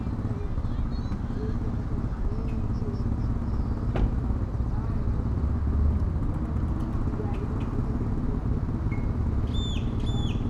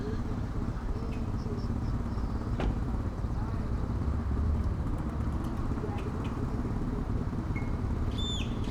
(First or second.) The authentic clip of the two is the first